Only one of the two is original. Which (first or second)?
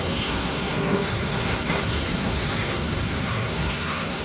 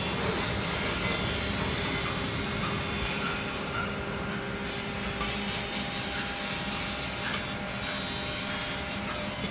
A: second